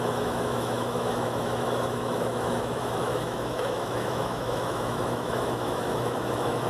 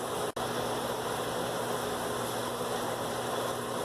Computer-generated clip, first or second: first